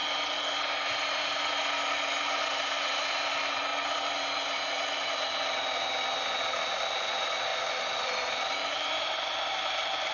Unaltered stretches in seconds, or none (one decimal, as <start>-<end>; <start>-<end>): 0.0-2.4; 3.7-6.8